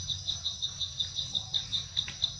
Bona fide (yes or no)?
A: yes